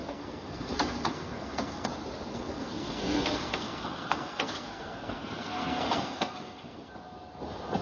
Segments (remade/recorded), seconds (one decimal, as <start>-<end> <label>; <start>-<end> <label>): 0.0-1.9 remade; 1.9-2.3 recorded; 2.3-6.9 remade; 6.9-7.8 recorded